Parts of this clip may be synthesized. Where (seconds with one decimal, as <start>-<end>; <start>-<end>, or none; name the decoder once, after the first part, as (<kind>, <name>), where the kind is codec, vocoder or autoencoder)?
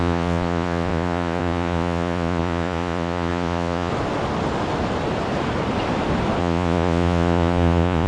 0.0-3.9 (vocoder, Vocos); 6.4-8.1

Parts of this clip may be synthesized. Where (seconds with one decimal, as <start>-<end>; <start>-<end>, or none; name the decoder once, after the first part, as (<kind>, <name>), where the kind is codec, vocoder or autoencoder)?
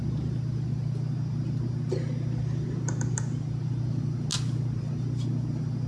none